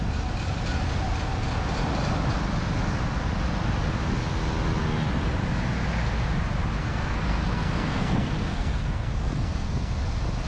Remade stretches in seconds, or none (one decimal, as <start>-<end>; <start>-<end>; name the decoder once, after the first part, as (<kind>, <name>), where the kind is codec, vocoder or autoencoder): 6.8-9.9 (codec, SNAC)